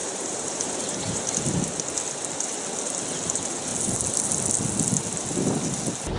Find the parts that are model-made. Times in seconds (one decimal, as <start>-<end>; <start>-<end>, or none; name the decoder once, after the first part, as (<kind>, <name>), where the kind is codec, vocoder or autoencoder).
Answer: 0.0-1.2 (vocoder, BigVGAN v2)